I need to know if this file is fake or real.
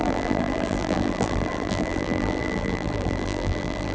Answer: fake